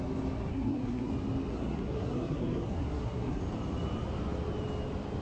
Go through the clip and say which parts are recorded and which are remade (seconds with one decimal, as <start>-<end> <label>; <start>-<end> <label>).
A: 0.0-0.5 recorded; 0.5-1.1 remade; 1.1-1.5 recorded; 1.5-3.4 remade; 3.4-5.2 recorded